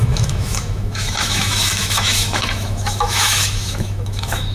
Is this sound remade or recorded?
remade